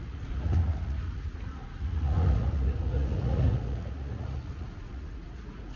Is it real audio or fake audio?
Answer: fake